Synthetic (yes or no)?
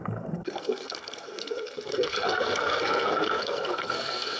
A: yes